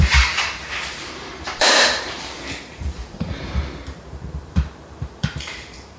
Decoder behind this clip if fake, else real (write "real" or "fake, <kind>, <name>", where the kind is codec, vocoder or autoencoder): fake, vocoder, BigVGAN v2